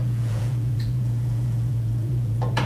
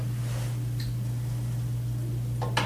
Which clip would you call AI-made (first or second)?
first